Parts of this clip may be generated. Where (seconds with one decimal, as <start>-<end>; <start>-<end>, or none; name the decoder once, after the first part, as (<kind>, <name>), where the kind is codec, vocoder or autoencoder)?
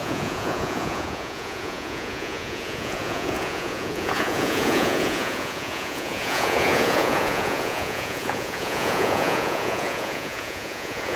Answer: 0.0-11.2 (vocoder, Vocos)